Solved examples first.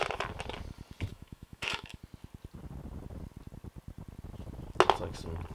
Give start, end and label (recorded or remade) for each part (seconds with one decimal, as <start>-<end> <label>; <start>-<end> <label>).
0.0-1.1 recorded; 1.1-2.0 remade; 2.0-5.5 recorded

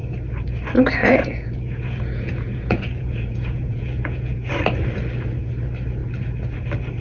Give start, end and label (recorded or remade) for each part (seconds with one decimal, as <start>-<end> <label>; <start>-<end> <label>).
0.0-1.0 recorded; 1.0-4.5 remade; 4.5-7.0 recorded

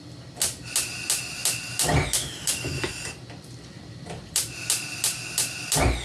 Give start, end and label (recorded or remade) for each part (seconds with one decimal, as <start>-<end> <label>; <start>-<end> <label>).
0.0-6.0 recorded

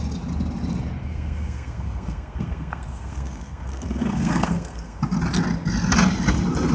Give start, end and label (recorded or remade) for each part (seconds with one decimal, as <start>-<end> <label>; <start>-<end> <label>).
0.0-1.0 recorded; 1.0-5.0 remade; 5.0-6.7 recorded